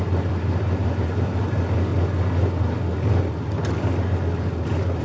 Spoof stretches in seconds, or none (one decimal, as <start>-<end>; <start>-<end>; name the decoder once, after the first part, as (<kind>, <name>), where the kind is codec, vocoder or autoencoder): 0.0-1.9 (vocoder, BigVGAN v2)